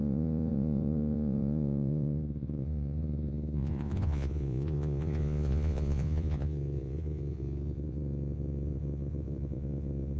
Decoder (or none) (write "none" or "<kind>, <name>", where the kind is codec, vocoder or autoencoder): vocoder, Vocos